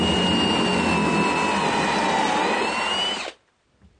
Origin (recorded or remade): recorded